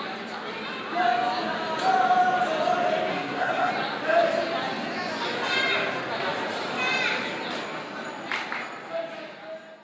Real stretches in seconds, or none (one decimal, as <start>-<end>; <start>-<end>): 0.0-3.1; 3.7-9.8